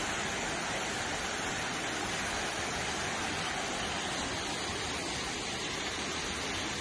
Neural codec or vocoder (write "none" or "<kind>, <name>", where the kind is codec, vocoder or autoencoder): none